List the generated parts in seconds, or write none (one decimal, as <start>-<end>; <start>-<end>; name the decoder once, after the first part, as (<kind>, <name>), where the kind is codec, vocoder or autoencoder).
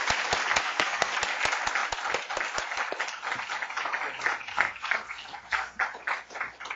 0.5-1.1 (codec, SNAC); 4.5-5.8